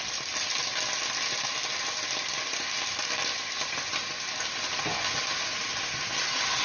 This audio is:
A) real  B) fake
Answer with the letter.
A